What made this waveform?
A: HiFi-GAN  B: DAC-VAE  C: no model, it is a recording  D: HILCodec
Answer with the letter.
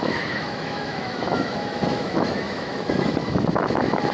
B